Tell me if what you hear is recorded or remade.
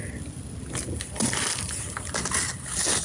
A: recorded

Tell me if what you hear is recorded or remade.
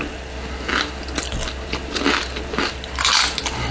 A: recorded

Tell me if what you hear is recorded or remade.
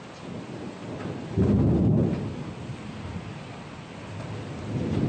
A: recorded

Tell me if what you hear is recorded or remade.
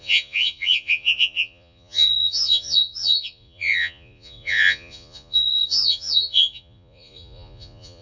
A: remade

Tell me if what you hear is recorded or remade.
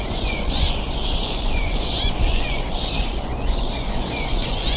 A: remade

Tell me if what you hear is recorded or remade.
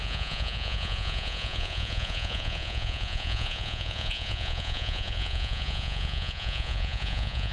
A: remade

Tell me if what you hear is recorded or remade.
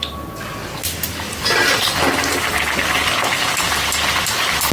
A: recorded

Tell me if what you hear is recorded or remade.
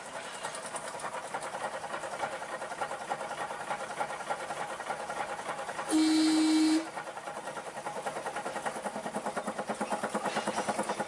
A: recorded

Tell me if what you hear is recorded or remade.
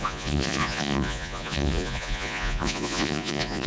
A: remade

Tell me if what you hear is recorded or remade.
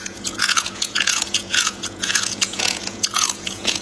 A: remade